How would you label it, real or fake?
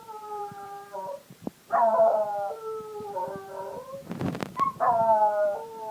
fake